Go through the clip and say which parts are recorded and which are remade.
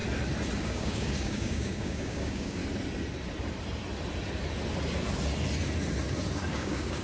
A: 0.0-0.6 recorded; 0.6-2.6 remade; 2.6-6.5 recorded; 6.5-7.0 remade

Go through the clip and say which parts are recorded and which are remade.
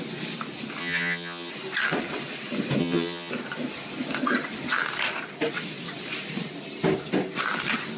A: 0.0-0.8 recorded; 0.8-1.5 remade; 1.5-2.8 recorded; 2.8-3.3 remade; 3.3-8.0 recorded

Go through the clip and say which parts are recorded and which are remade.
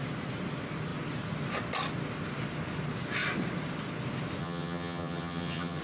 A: 0.0-4.4 recorded; 4.4-5.8 remade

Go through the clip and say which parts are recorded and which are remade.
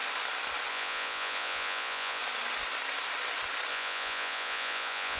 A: 0.0-0.7 recorded; 0.7-2.2 remade; 2.2-3.7 recorded; 3.7-5.2 remade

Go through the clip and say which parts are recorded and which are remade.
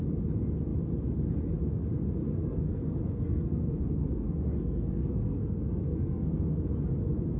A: 0.0-2.2 recorded; 2.2-6.6 remade; 6.6-7.4 recorded